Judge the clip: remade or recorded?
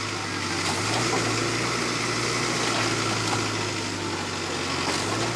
recorded